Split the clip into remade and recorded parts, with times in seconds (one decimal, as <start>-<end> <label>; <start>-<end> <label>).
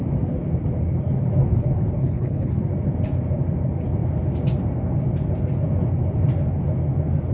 0.0-2.0 recorded; 2.0-2.6 remade; 2.6-7.3 recorded